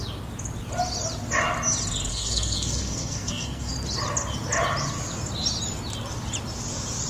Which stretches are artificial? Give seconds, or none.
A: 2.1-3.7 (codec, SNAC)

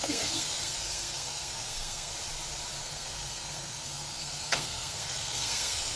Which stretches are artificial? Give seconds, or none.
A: 0.0-2.1 (codec, SNAC); 2.8-6.0

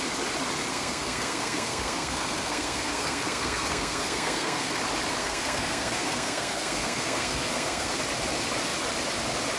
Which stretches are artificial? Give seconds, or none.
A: 0.7-4.8 (codec, SNAC); 5.2-8.0